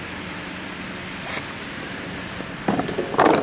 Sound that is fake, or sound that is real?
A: real